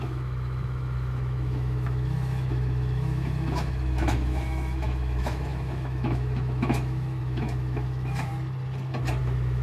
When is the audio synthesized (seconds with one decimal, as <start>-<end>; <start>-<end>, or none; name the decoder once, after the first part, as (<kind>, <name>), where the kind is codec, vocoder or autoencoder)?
0.0-8.3 (autoencoder, DAC-VAE); 9.2-9.6

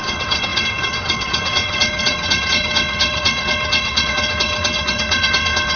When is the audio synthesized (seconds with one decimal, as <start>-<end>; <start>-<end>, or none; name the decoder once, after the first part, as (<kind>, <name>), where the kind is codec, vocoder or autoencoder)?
0.0-5.8 (vocoder, WaveNeXt)

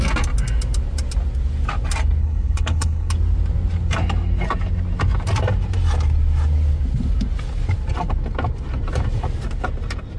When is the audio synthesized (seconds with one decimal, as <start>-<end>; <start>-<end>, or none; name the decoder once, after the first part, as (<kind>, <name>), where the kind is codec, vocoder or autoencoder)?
2.2-3.1 (codec, HILCodec)

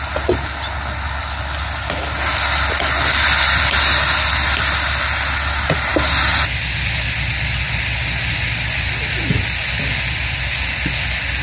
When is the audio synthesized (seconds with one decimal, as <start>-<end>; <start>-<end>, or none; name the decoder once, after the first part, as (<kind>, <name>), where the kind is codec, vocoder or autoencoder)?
none

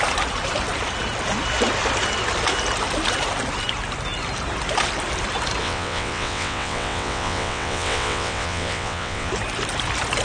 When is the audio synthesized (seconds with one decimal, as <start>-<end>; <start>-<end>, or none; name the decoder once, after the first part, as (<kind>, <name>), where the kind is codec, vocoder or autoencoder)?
5.6-9.3 (vocoder, WaveNeXt)